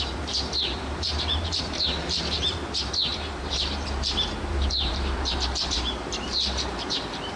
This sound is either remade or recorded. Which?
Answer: remade